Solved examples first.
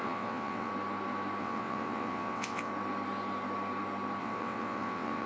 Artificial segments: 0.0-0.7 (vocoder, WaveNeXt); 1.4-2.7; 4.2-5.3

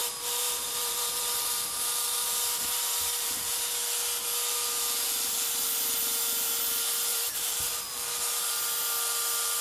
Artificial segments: 0.0-3.6 (vocoder, BigVGAN v2); 7.1-7.7